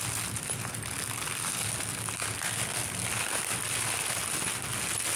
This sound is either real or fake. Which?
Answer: real